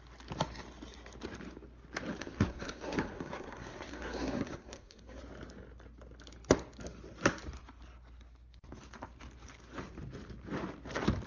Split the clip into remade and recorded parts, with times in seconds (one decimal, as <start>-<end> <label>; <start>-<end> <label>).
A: 0.0-2.2 recorded; 2.2-5.2 remade; 5.2-11.3 recorded